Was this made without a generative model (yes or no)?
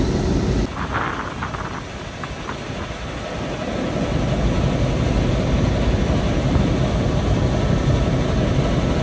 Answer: yes